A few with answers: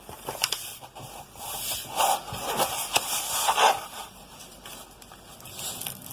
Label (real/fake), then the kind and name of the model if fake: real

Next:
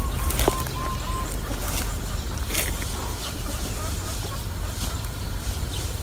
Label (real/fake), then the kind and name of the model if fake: real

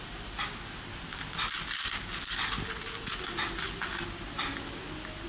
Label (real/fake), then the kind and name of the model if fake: real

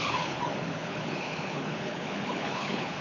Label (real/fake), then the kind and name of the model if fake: fake, codec, HILCodec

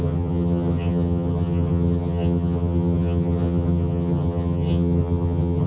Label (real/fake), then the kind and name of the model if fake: fake, vocoder, HiFi-GAN